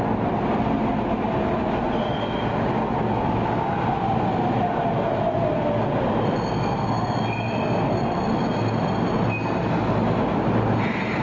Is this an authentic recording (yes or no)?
yes